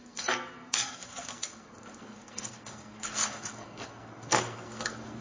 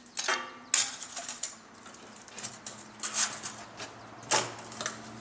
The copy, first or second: first